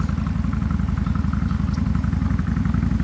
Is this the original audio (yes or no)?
yes